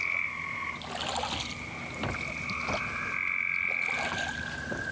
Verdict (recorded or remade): recorded